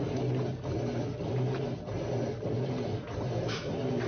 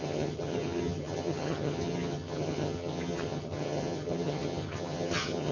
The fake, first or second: second